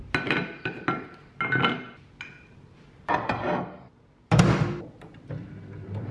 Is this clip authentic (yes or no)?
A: yes